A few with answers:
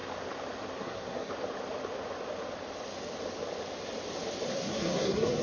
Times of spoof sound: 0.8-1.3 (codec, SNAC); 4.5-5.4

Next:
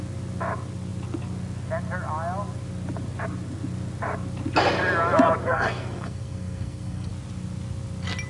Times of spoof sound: 5.4-7.1 (codec, SNAC)